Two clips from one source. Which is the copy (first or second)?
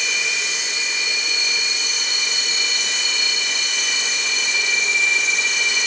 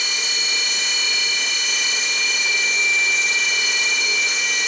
first